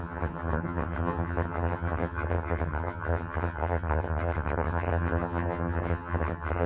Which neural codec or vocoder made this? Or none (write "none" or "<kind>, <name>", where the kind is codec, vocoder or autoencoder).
vocoder, HiFi-GAN